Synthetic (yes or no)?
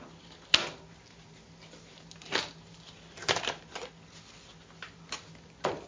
no